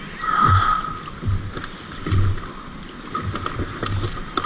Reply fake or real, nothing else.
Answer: real